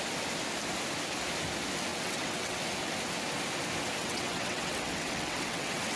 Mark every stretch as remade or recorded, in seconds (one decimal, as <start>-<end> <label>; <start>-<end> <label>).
0.0-1.9 recorded; 1.9-2.6 remade; 2.6-4.0 recorded; 4.0-6.0 remade